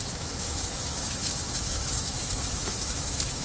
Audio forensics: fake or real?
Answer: fake